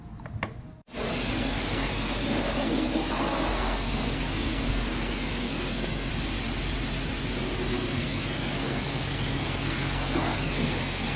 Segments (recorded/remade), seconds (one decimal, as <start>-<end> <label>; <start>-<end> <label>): 0.0-1.1 recorded; 1.1-6.1 remade; 6.1-7.7 recorded; 7.7-11.2 remade